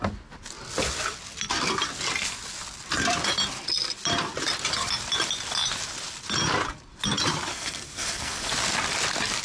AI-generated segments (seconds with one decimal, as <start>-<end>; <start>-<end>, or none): 7.5-8.5